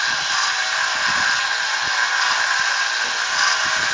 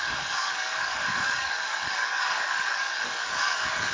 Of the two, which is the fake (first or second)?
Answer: second